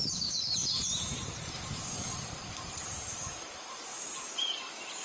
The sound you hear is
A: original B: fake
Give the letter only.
B